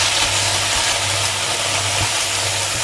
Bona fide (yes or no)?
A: yes